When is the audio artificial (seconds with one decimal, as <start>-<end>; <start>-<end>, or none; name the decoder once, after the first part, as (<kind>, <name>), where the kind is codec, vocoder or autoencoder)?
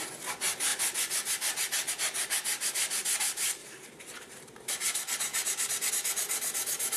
3.6-4.7 (vocoder, BigVGAN v2)